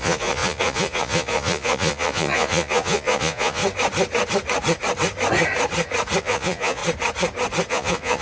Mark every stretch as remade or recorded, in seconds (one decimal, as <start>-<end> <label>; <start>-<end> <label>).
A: 0.0-3.6 remade; 3.6-6.2 recorded; 6.2-6.8 remade; 6.8-7.7 recorded; 7.7-8.2 remade